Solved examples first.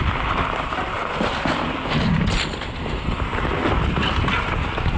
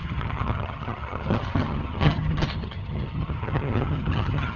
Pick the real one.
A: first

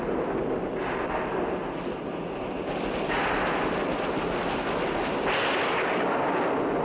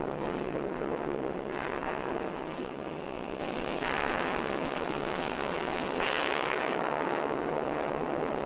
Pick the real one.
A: first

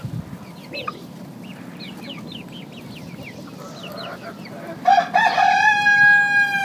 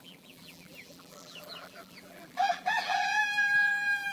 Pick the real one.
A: first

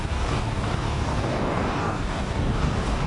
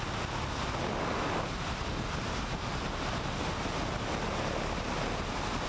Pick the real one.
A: second